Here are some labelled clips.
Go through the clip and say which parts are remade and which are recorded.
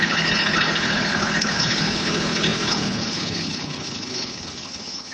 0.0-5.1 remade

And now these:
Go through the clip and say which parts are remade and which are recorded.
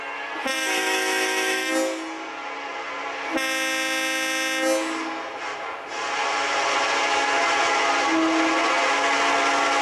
0.0-0.5 recorded; 0.5-1.7 remade; 1.7-9.8 recorded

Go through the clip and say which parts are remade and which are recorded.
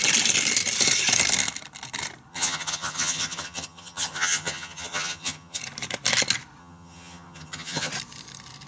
0.0-2.3 recorded; 2.3-5.6 remade; 5.6-6.6 recorded; 6.6-7.9 remade; 7.9-8.7 recorded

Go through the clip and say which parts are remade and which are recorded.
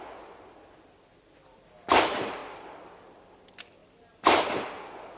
0.0-5.2 recorded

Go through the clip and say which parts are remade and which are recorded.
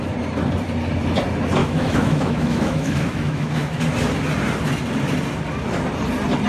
0.0-1.6 recorded; 1.6-3.8 remade; 3.8-6.5 recorded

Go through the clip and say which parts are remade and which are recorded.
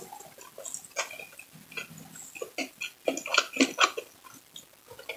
0.0-5.2 recorded